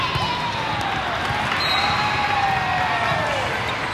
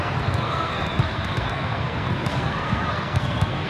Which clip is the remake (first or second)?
second